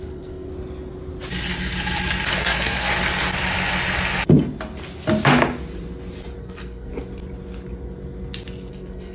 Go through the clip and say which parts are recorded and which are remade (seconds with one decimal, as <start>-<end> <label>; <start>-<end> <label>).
0.0-0.5 remade; 0.5-2.4 recorded; 2.4-2.9 remade; 2.9-6.4 recorded; 6.4-6.9 remade; 6.9-8.7 recorded; 8.7-9.1 remade